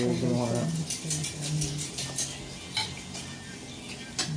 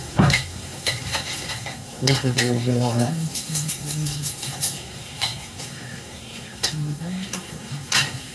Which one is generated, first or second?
second